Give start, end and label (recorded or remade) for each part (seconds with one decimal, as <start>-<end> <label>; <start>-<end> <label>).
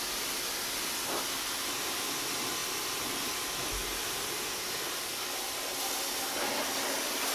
0.0-7.3 recorded